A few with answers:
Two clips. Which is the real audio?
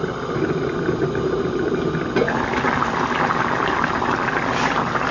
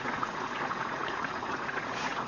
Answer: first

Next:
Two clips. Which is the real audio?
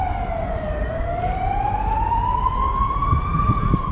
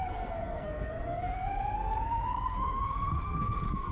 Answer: first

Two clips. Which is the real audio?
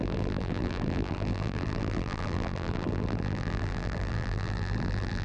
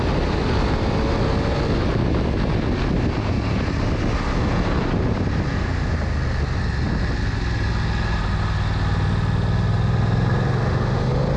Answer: second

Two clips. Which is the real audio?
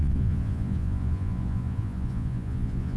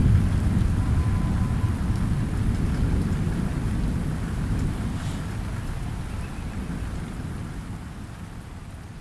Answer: second